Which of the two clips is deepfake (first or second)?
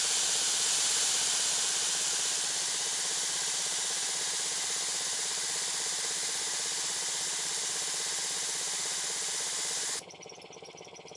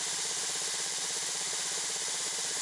second